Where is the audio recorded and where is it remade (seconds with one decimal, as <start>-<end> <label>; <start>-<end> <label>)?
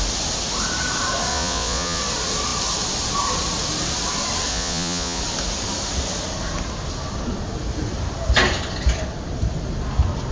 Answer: 0.0-1.3 recorded; 1.3-2.0 remade; 2.0-4.5 recorded; 4.5-5.2 remade; 5.2-10.3 recorded